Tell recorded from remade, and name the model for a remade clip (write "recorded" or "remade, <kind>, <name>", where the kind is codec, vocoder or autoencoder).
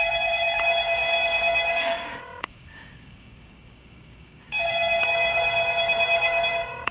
remade, codec, DAC